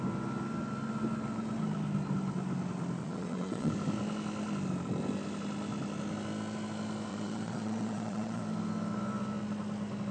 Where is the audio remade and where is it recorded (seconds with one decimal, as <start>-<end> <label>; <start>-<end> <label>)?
0.0-3.0 recorded; 3.0-3.7 remade; 3.7-7.1 recorded; 7.1-8.4 remade; 8.4-10.1 recorded